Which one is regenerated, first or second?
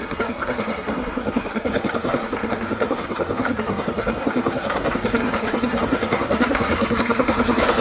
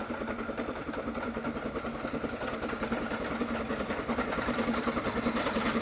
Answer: first